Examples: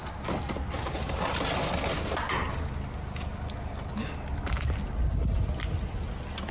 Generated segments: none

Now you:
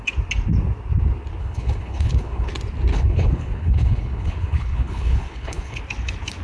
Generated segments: 1.4-2.5 (codec, HILCodec); 2.9-5.8